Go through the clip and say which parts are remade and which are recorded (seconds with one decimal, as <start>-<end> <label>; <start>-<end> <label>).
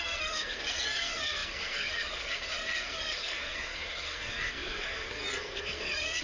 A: 0.0-6.2 remade